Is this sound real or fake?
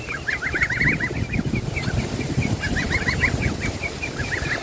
real